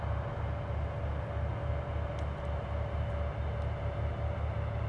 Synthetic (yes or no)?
no